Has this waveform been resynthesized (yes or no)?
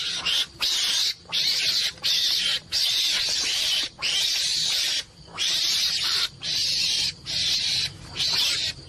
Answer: yes